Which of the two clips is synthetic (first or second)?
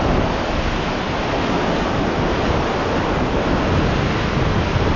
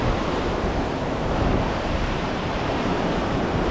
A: second